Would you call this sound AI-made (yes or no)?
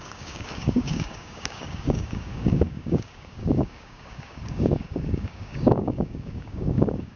yes